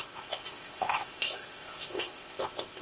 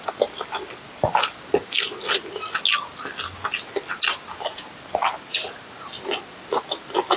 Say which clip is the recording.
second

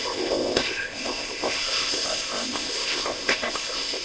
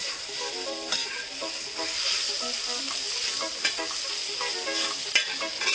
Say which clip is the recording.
second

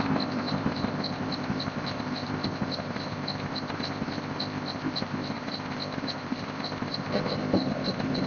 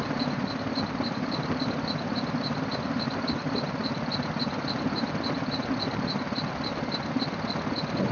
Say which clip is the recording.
second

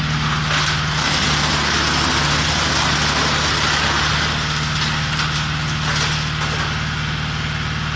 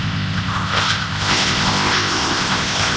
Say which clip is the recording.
first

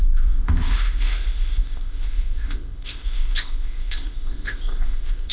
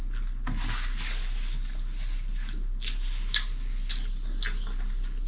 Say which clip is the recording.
second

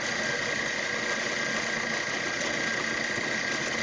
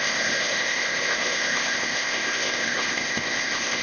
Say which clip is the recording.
first